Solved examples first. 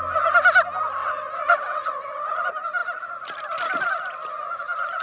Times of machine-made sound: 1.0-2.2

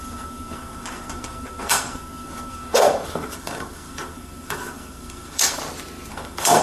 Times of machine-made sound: 0.0-5.6; 6.1-6.6

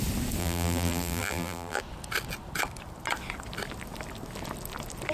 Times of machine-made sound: 0.4-1.8

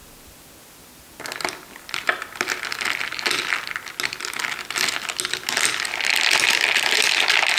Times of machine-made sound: none

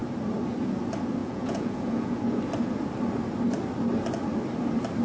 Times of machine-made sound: 1.2-2.4

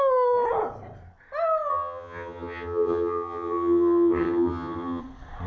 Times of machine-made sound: 1.7-5.0

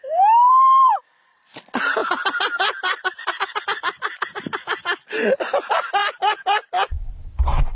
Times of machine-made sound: 0.0-0.9